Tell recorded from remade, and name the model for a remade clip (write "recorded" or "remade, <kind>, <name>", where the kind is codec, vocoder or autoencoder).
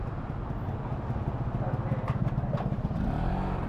recorded